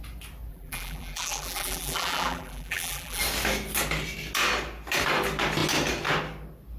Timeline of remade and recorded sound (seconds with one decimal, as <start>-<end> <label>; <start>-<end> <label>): 0.0-0.5 recorded; 0.5-3.2 remade; 3.2-6.8 recorded